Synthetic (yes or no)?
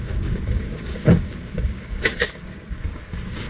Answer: yes